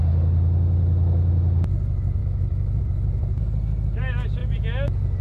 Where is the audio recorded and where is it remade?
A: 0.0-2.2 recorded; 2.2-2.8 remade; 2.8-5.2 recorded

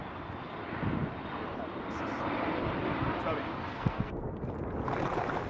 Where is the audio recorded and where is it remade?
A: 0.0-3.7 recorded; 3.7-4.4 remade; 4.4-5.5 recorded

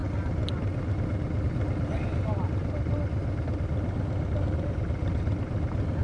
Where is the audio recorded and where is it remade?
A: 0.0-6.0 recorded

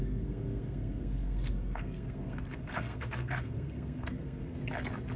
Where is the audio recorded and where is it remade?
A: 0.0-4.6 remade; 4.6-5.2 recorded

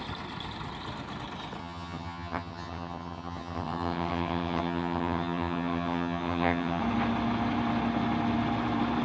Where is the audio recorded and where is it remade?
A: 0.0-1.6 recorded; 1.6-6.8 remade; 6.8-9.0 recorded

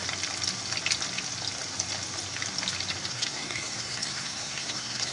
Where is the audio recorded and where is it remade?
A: 0.0-3.1 recorded; 3.1-5.1 remade

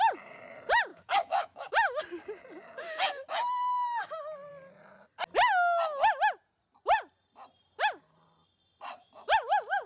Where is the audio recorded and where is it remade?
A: 0.0-0.9 recorded; 0.9-2.0 remade; 2.0-9.9 recorded